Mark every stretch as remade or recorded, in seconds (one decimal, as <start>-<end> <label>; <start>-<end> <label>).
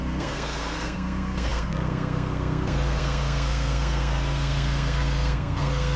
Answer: 0.0-6.0 remade